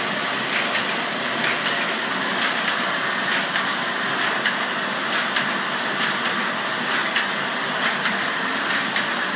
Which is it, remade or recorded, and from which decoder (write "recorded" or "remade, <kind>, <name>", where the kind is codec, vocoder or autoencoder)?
recorded